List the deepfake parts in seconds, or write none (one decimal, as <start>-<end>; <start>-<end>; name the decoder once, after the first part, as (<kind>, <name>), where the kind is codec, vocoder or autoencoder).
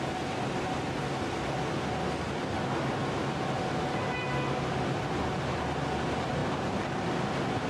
6.4-7.0 (vocoder, BigVGAN v2)